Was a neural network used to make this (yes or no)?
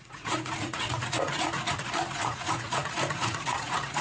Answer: yes